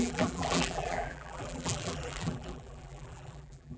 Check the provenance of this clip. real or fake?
fake